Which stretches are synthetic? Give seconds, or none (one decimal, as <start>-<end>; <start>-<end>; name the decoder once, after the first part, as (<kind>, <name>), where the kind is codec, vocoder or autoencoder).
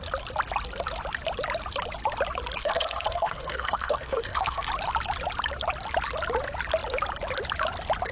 2.6-4.7 (codec, SNAC)